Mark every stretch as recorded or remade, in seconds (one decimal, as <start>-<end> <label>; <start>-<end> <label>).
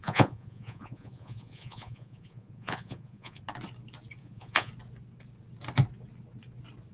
0.0-3.4 remade; 3.4-4.2 recorded; 4.2-4.7 remade; 4.7-6.9 recorded